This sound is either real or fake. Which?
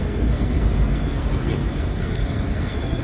fake